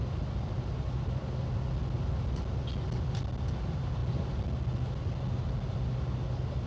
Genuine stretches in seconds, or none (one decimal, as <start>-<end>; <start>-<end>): 0.0-6.7

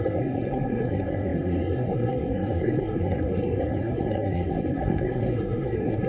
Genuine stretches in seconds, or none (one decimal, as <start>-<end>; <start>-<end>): none